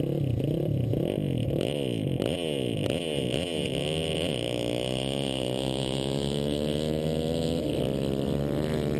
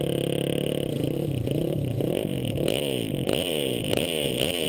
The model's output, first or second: second